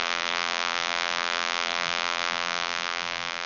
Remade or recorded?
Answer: remade